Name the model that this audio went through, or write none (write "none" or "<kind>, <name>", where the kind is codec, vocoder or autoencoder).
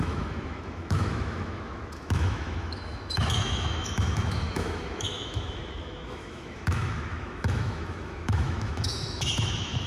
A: autoencoder, DAC-VAE